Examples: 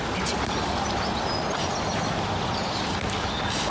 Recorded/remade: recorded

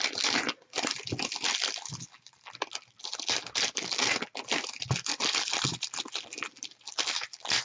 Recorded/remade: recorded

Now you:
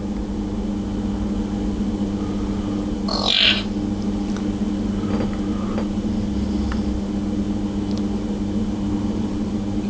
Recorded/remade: recorded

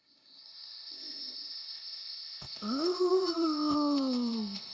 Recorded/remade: remade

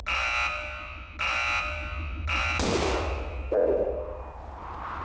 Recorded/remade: recorded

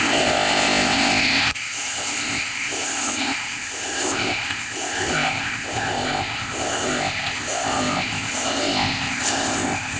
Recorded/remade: remade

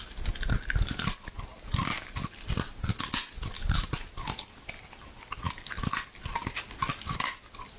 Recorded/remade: recorded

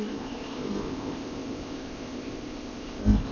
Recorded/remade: remade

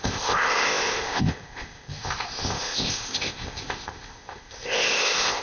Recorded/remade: remade